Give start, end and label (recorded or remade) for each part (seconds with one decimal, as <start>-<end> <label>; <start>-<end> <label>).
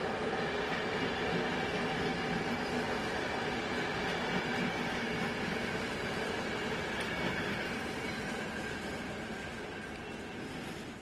0.0-5.5 recorded; 5.5-6.3 remade; 6.3-11.0 recorded